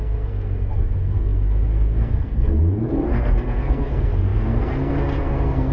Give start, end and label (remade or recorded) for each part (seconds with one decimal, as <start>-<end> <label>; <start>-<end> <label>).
0.0-5.7 remade